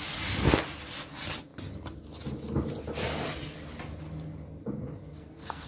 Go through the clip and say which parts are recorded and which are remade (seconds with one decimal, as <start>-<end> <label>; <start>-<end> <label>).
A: 0.0-5.1 recorded; 5.1-5.7 remade